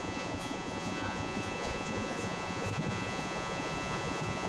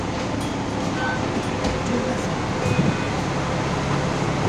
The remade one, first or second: first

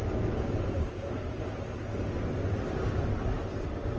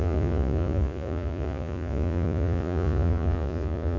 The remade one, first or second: second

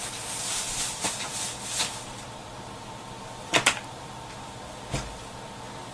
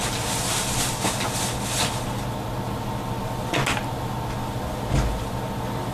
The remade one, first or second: first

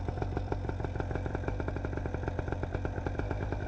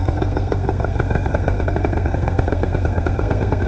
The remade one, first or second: second